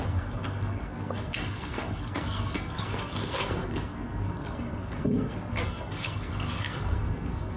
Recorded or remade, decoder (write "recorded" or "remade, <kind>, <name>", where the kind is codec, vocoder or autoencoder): remade, codec, SNAC